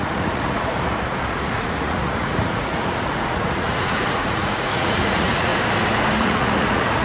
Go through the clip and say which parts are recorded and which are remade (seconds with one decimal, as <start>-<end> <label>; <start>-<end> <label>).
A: 0.0-5.5 remade; 5.5-6.2 recorded; 6.2-7.0 remade